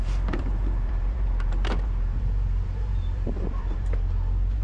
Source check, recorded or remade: remade